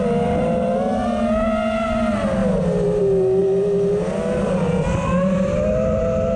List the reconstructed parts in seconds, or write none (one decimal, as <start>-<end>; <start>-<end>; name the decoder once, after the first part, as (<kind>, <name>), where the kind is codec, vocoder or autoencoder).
none